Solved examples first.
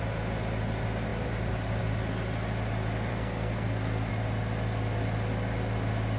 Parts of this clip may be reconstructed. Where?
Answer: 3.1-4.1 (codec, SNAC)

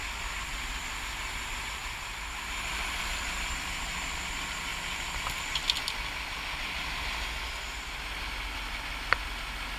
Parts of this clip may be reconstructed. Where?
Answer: none

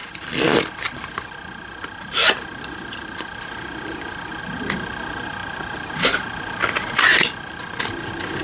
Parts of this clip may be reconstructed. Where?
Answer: 0.0-4.4 (vocoder, BigVGAN v2)

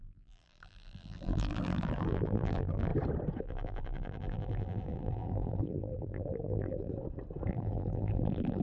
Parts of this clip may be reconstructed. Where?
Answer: 0.0-2.9 (vocoder, BigVGAN v2); 3.4-6.9; 7.5-8.6

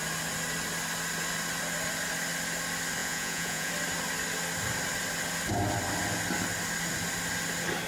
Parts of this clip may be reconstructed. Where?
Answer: 3.0-3.7 (vocoder, Vocos)

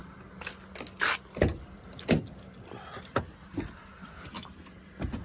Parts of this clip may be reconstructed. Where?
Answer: none